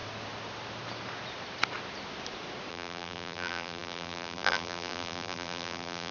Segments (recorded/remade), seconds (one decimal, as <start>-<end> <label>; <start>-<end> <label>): 0.0-2.7 recorded; 2.7-6.1 remade